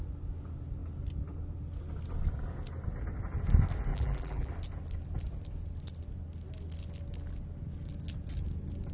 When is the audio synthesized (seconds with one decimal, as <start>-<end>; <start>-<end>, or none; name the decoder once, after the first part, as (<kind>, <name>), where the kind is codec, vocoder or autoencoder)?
3.9-4.5 (vocoder, BigVGAN v2)